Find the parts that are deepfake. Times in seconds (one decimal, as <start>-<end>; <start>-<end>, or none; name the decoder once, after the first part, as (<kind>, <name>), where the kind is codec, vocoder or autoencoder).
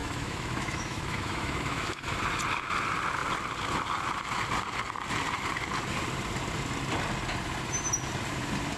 0.0-2.2 (autoencoder, DAC-VAE)